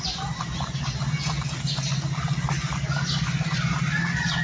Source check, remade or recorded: recorded